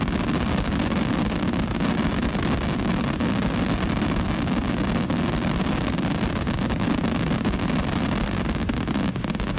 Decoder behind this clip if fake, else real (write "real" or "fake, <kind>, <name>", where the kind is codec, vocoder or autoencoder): real